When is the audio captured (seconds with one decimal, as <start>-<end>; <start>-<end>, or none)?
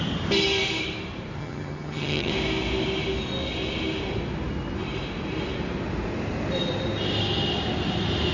0.0-1.4; 2.3-8.3